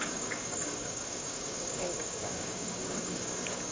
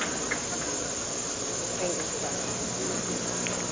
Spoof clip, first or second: first